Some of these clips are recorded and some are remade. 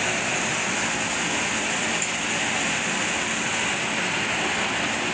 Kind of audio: recorded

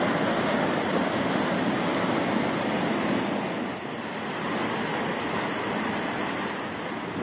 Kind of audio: recorded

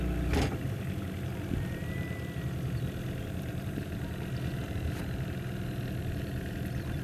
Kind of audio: recorded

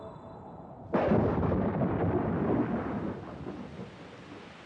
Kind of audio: recorded